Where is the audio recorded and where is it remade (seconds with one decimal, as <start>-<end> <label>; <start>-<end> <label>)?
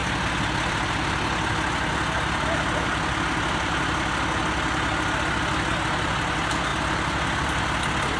0.0-8.2 recorded